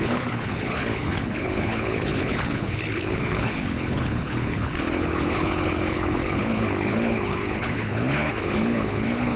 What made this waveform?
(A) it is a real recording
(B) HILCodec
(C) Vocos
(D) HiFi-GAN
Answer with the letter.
B